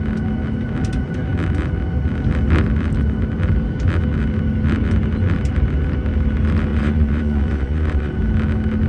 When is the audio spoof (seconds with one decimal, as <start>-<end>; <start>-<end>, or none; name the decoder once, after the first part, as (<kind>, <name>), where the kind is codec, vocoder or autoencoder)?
6.7-8.1 (vocoder, Vocos)